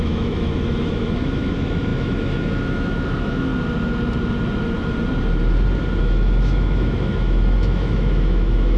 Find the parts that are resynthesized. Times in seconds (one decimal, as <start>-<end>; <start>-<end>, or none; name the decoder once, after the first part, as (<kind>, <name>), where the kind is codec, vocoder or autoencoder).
0.0-3.5 (autoencoder, DAC-VAE); 6.0-8.8